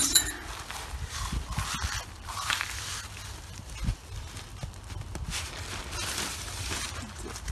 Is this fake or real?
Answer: real